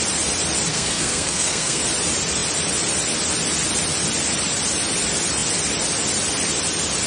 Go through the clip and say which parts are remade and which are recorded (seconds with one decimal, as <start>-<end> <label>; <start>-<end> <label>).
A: 0.0-0.7 recorded; 0.7-1.8 remade; 1.8-7.1 recorded